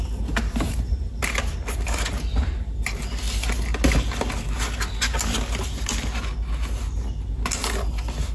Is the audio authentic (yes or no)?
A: yes